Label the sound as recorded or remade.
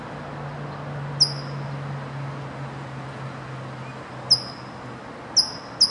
recorded